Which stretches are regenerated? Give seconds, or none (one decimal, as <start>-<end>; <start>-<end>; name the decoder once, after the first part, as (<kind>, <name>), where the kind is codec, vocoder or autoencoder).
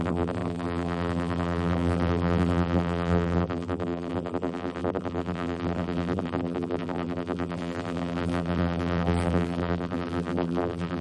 0.0-11.0 (vocoder, BigVGAN v2)